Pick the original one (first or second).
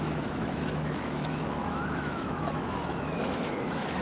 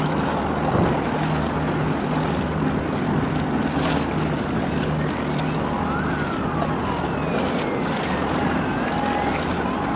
second